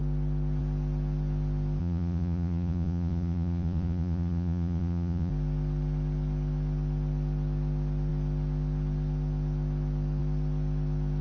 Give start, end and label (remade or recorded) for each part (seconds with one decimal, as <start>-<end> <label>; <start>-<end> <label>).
0.0-1.8 recorded; 1.8-5.3 remade; 5.3-11.2 recorded